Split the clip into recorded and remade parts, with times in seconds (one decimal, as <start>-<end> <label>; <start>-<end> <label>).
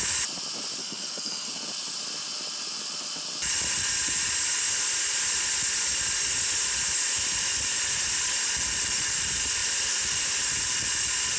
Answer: 0.0-0.8 recorded; 0.8-1.5 remade; 1.5-11.4 recorded